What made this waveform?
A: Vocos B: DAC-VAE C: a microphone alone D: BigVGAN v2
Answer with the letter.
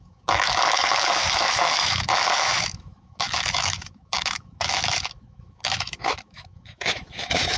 B